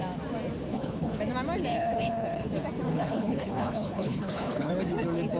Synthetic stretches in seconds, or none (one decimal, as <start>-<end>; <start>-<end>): 0.7-1.2; 1.7-2.5; 2.9-4.7